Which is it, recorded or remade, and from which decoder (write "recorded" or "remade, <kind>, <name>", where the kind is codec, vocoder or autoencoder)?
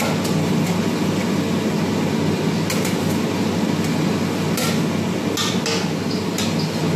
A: recorded